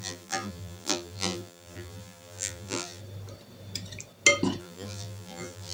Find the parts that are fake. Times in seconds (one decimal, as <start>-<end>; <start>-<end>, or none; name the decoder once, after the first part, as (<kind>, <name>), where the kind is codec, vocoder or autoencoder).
0.0-3.0 (vocoder, BigVGAN v2); 4.6-5.7